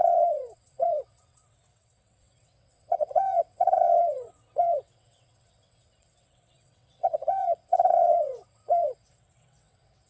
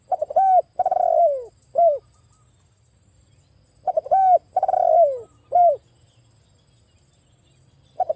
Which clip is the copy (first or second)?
first